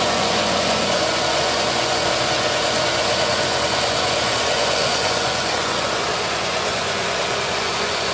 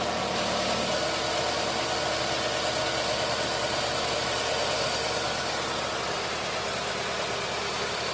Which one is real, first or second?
second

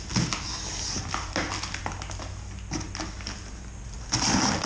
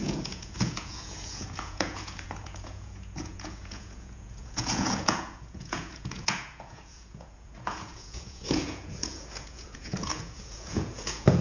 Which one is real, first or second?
first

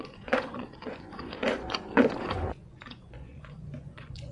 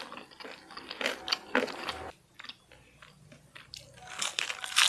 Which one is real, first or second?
second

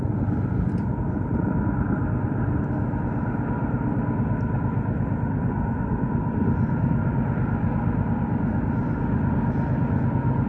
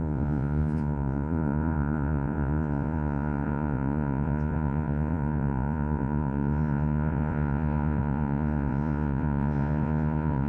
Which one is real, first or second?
first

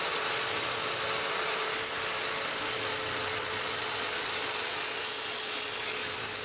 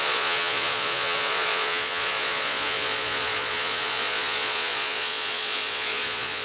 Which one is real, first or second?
first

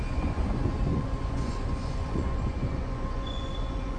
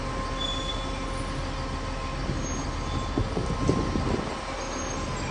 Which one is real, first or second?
second